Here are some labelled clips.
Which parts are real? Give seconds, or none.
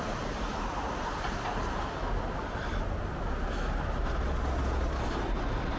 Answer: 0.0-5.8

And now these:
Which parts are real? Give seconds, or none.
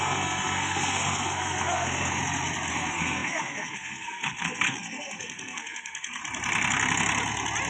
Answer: 2.2-2.7; 6.2-7.7